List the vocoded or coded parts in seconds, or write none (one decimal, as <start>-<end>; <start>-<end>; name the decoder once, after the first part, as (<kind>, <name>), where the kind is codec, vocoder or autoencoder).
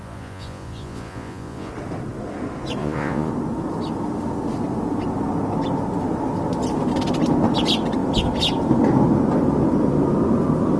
0.0-1.7 (vocoder, Vocos); 2.8-3.3